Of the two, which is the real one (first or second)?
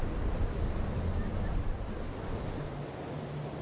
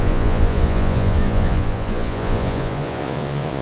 first